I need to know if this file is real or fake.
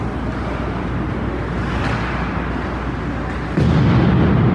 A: real